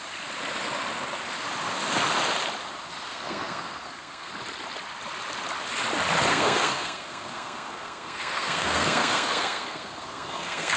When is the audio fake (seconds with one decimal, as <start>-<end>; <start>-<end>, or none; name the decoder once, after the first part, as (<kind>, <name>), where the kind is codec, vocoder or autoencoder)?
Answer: 3.1-4.3 (codec, SNAC); 6.3-10.8